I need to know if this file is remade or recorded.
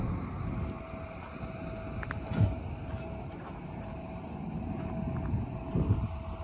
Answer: recorded